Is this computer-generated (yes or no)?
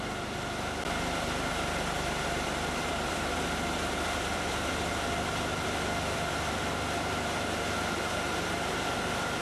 yes